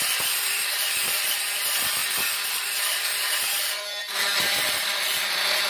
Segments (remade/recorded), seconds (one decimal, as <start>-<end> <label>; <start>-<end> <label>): 0.0-5.7 recorded